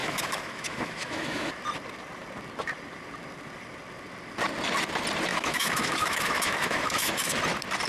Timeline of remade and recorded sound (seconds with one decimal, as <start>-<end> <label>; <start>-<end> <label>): 0.0-1.5 remade; 1.5-5.3 recorded; 5.3-7.4 remade; 7.4-7.9 recorded